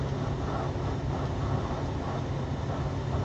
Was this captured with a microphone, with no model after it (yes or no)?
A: yes